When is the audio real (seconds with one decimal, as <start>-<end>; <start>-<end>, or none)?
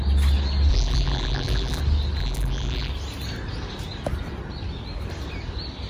0.0-0.7; 1.8-2.2; 2.9-5.9